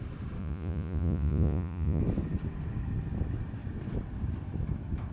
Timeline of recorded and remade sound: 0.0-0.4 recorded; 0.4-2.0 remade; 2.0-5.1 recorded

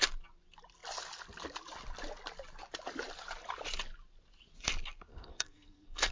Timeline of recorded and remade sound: 0.0-5.1 recorded; 5.1-6.1 remade

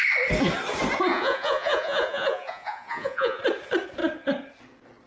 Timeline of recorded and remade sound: 0.0-1.1 recorded; 1.1-3.4 remade; 3.4-5.1 recorded

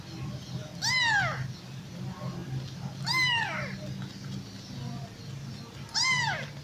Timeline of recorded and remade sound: 0.0-6.6 recorded